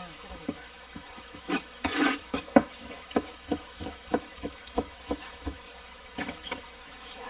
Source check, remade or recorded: remade